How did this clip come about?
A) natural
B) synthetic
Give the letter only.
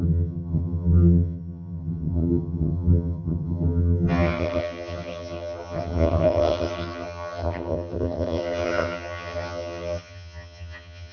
B